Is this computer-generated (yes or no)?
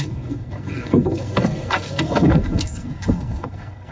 yes